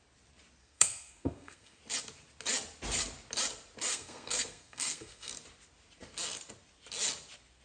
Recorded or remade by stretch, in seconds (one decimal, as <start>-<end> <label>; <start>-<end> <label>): 0.0-0.6 recorded; 0.6-1.8 remade; 1.8-3.9 recorded; 3.9-5.3 remade; 5.3-7.6 recorded